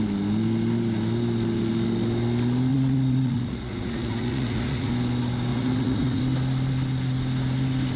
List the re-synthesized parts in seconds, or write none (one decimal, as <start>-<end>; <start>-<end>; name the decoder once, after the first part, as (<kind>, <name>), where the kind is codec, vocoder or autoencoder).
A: 2.7-4.9 (vocoder, Vocos); 5.5-6.2

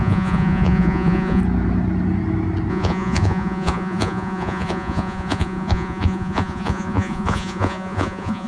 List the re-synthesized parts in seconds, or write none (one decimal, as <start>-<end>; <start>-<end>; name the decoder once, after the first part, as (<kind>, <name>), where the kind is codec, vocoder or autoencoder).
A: 0.0-1.4 (vocoder, Vocos); 2.7-8.5

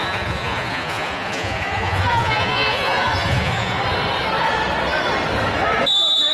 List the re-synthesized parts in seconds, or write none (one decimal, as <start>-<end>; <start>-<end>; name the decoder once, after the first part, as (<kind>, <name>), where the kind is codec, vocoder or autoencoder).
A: 0.0-3.8 (vocoder, Vocos)

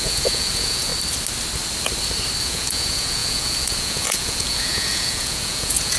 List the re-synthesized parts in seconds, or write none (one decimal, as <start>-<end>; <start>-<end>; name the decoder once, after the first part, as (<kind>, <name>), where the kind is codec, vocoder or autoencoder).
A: 0.0-0.9 (vocoder, Vocos); 2.4-6.0